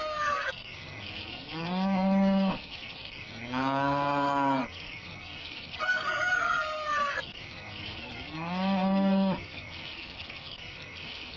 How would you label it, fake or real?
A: fake